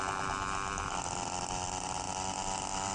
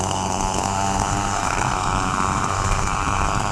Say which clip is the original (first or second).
first